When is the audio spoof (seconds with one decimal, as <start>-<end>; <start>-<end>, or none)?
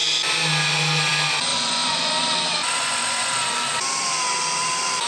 1.5-2.1; 2.6-3.7